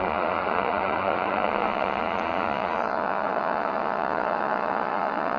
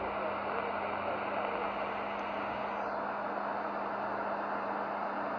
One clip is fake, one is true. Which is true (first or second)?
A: second